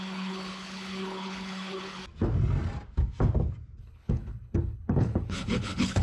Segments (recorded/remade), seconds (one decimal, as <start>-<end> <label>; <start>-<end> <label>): 0.0-2.0 remade; 2.0-3.8 recorded; 3.8-6.0 remade